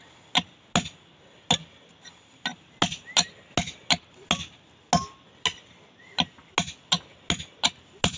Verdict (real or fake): real